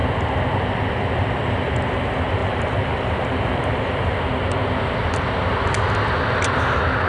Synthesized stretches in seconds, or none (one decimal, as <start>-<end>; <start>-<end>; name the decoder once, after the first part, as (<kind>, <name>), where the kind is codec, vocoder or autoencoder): 2.4-4.2 (vocoder, BigVGAN v2)